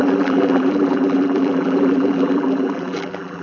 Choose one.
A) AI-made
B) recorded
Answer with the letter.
A